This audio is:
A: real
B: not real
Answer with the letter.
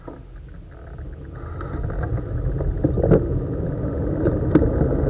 A